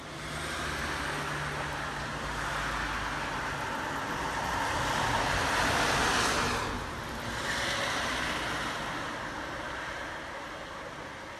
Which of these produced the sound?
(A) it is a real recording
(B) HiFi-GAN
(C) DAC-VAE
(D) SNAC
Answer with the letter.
A